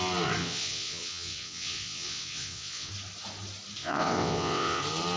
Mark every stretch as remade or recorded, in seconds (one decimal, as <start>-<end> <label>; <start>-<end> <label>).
0.0-0.4 recorded; 0.4-2.9 remade; 2.9-3.8 recorded; 3.8-4.8 remade; 4.8-5.2 recorded